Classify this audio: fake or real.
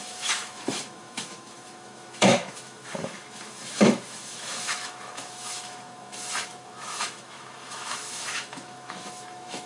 fake